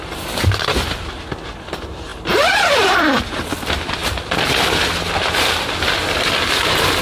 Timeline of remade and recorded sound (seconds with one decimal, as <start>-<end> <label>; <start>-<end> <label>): 0.0-7.0 recorded